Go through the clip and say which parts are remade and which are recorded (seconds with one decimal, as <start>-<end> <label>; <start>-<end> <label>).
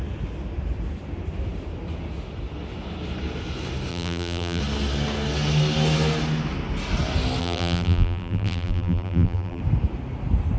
0.0-3.9 recorded; 3.9-4.6 remade; 4.6-7.4 recorded; 7.4-9.6 remade; 9.6-10.6 recorded